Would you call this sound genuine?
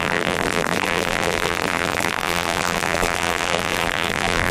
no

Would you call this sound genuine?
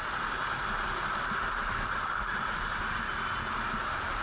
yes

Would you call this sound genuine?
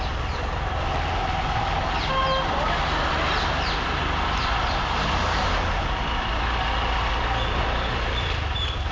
yes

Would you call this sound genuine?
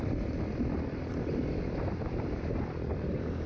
yes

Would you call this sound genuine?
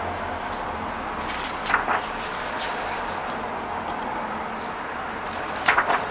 yes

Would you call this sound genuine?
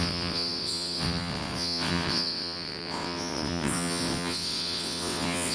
no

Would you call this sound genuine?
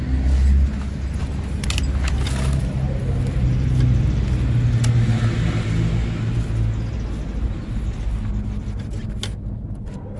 yes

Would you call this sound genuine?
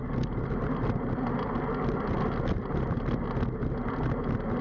yes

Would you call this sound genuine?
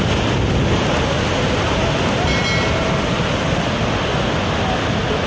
yes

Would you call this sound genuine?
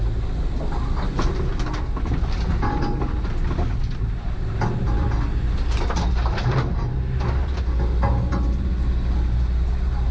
yes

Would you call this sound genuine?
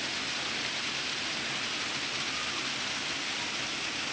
yes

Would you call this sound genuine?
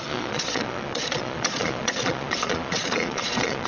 no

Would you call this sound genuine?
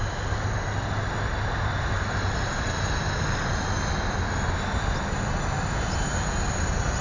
yes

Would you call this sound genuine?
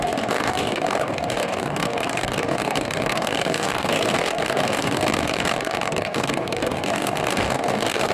no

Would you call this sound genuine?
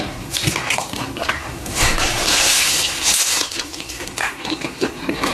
no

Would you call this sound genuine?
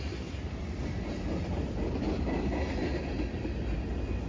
yes